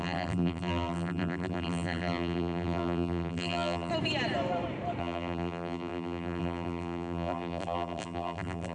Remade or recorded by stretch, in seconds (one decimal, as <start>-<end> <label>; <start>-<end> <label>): 0.0-3.9 remade; 3.9-5.0 recorded; 5.0-8.7 remade